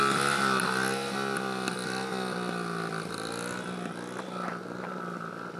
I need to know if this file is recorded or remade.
recorded